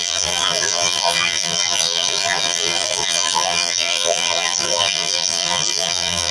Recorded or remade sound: remade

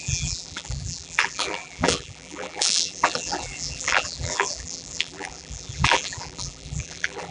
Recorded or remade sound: remade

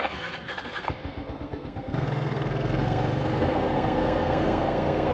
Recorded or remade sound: remade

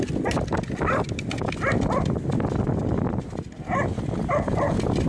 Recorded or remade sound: recorded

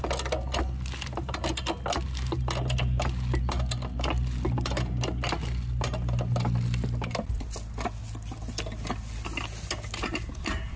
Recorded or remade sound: recorded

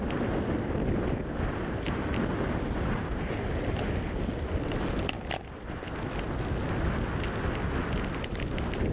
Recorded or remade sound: recorded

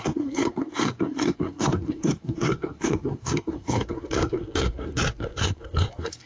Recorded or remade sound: remade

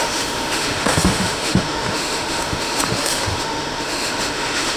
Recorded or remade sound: remade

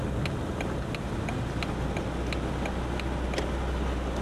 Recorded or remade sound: recorded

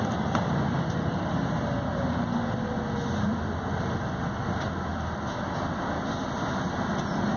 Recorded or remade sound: recorded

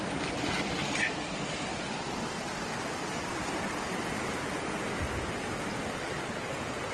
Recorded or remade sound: recorded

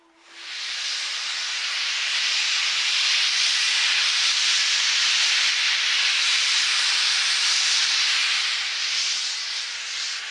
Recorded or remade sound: recorded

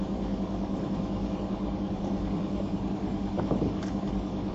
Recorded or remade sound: remade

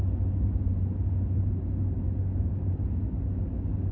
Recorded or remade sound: recorded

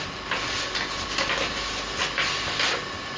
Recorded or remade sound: recorded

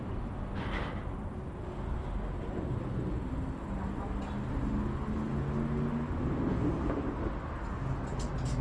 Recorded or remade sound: recorded